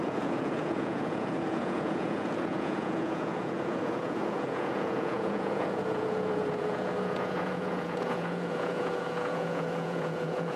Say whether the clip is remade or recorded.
remade